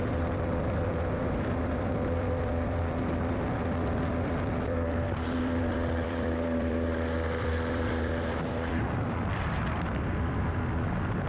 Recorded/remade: remade